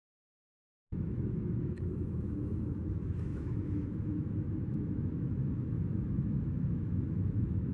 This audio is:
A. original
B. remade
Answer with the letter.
B